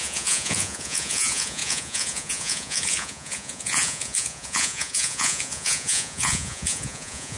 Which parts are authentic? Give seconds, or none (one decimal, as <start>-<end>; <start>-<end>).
none